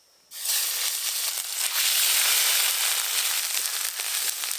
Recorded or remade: recorded